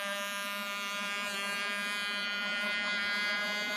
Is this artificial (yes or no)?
no